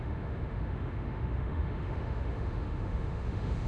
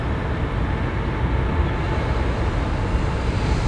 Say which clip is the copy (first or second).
first